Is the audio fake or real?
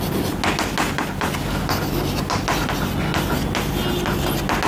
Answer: real